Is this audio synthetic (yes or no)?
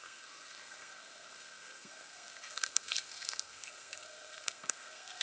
yes